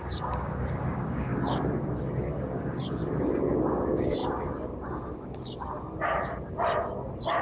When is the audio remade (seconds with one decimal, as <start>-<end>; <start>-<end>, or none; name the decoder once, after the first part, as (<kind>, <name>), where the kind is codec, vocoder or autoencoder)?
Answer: 0.0-1.3 (codec, DAC); 2.3-3.0; 3.7-4.2